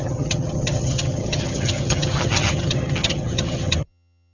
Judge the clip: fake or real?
fake